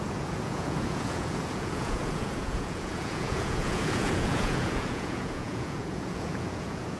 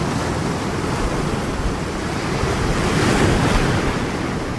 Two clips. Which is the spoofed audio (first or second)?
first